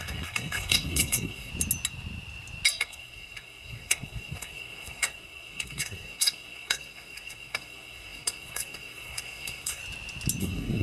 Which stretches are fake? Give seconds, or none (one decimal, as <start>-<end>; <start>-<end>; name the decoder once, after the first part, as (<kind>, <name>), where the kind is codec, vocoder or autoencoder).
0.0-1.5 (codec, SNAC); 2.8-9.8; 10.4-10.8